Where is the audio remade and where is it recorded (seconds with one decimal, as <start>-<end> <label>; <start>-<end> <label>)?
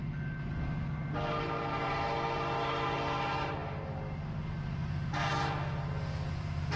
0.0-6.8 recorded